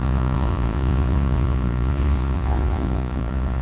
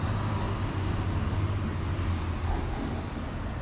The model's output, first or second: first